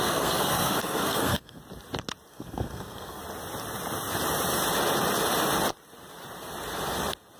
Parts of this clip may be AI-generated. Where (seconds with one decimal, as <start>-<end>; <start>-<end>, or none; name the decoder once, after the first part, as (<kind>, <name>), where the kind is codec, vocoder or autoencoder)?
0.0-1.6 (codec, SNAC); 2.3-3.2